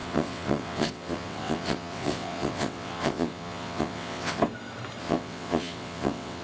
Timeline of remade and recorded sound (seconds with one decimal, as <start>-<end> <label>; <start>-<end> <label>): 0.0-4.4 remade; 4.4-5.0 recorded; 5.0-6.4 remade